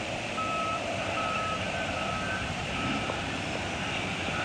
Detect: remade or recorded remade